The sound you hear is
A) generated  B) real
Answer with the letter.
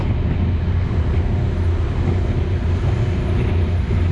B